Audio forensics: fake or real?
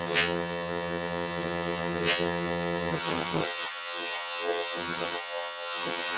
fake